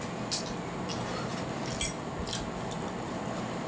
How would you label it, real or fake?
real